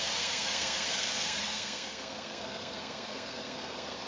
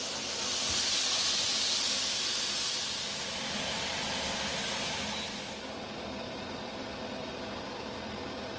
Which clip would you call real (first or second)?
second